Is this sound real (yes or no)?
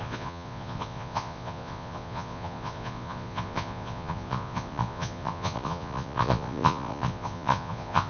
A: no